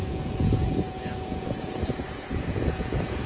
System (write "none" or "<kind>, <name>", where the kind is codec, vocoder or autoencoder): vocoder, Vocos